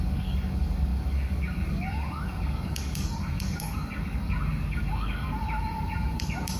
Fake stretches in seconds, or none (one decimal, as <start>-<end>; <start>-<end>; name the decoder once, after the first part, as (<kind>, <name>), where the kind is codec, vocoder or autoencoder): 0.0-6.6 (codec, DAC)